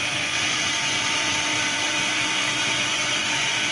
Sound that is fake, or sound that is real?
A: fake